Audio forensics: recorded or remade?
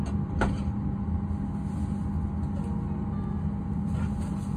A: recorded